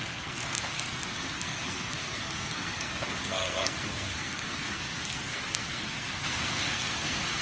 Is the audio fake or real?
fake